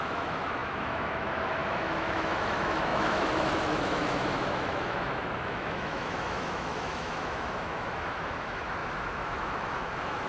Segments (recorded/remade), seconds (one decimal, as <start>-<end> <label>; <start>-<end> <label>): 0.0-10.3 remade